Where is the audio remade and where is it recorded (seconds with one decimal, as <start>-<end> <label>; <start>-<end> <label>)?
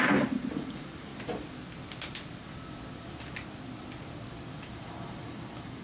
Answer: 0.0-1.1 remade; 1.1-4.6 recorded; 4.6-5.8 remade